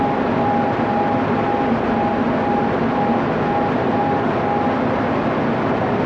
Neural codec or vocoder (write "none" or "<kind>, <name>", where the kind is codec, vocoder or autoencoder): none